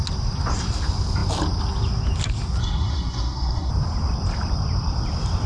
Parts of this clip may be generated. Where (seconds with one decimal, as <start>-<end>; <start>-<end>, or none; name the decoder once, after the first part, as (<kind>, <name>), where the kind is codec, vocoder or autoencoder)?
2.6-3.7 (codec, SNAC)